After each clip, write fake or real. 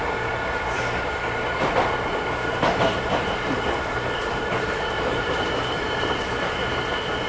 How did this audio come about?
fake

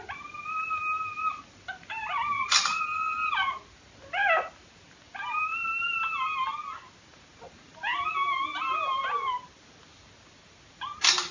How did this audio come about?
real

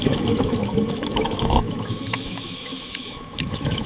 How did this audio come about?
fake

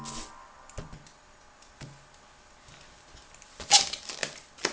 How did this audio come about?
real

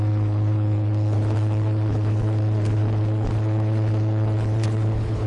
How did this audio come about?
fake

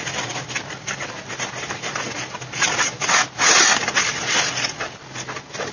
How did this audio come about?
real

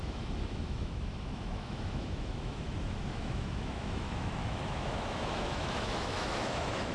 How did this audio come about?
fake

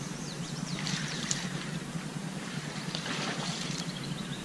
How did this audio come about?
fake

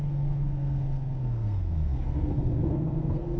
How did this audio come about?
fake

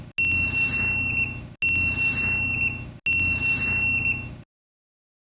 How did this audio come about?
real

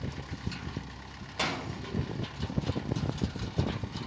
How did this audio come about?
real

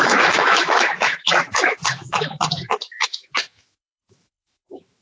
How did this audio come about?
fake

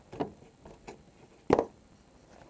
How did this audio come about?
real